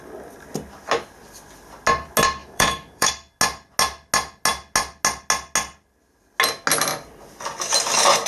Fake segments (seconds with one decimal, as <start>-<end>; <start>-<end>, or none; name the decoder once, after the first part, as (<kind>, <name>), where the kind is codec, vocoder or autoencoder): 2.4-3.1 (autoencoder, DAC-VAE)